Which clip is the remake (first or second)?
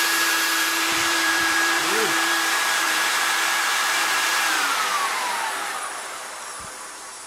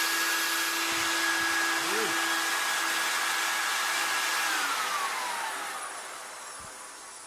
first